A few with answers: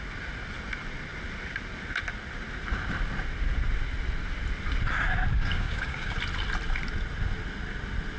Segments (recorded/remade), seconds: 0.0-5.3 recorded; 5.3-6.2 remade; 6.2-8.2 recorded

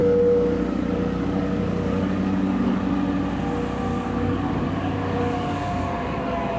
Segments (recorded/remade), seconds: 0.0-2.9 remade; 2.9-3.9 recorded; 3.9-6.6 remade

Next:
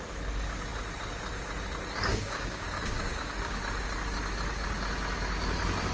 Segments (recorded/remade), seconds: 0.0-2.1 recorded; 2.1-3.6 remade; 3.6-5.9 recorded

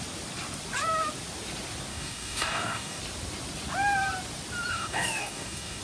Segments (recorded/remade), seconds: 0.0-1.9 recorded; 1.9-3.0 remade; 3.0-4.7 recorded; 4.7-5.8 remade